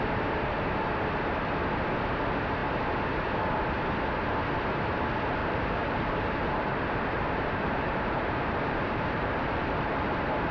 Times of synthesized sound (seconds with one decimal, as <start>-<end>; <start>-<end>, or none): 5.4-10.1

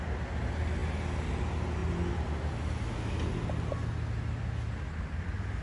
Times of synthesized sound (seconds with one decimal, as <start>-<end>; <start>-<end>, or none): none